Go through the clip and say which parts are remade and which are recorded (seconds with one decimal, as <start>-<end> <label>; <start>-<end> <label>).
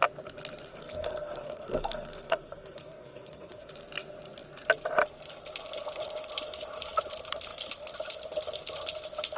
0.0-0.7 recorded; 0.7-3.7 remade; 3.7-9.4 recorded